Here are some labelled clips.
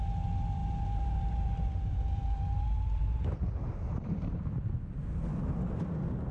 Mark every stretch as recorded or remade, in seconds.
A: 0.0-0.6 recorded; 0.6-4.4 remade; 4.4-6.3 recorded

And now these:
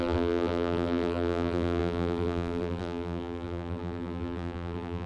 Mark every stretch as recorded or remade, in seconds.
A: 0.0-5.1 remade

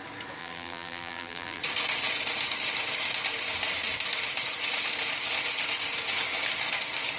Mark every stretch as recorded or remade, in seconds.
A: 0.0-0.4 recorded; 0.4-1.6 remade; 1.6-7.2 recorded

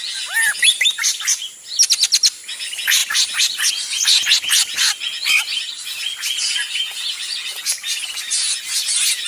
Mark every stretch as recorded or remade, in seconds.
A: 0.0-3.0 recorded; 3.0-3.7 remade; 3.7-9.3 recorded

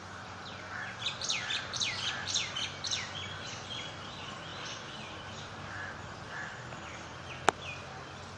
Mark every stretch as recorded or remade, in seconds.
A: 0.0-8.4 recorded

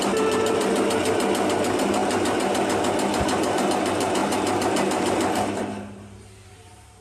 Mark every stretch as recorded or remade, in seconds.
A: 0.0-7.0 remade